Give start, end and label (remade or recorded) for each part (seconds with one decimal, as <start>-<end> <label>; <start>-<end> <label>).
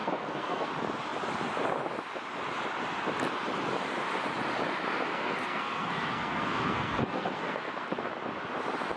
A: 0.0-0.7 remade; 0.7-5.1 recorded; 5.1-8.1 remade; 8.1-9.0 recorded